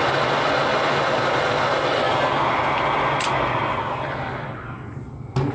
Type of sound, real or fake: real